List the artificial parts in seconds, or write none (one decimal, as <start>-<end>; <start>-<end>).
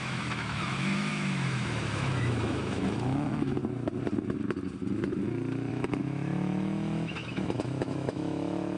0.0-3.6; 5.7-8.8